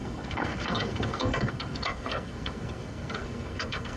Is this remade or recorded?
remade